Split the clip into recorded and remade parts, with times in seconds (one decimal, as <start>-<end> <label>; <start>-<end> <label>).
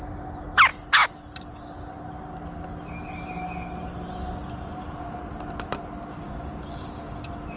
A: 0.0-7.6 recorded